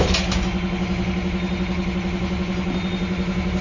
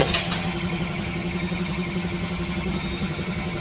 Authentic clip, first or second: first